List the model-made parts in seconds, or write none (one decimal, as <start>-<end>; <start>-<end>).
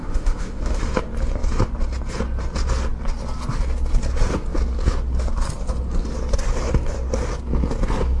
0.0-0.8